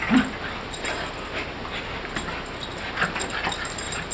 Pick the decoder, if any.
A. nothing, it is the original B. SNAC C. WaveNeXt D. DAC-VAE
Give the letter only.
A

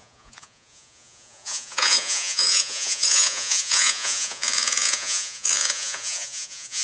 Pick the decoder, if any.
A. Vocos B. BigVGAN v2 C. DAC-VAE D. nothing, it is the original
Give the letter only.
A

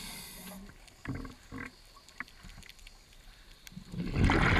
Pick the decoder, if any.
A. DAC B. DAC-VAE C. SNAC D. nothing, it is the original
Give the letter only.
D